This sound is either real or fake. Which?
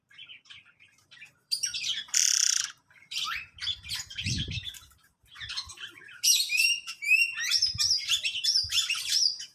fake